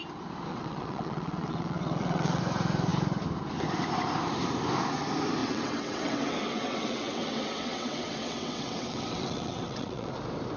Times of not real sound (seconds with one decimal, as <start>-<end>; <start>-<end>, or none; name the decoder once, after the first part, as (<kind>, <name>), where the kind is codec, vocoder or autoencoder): 0.5-2.4 (vocoder, WaveNeXt); 5.4-10.1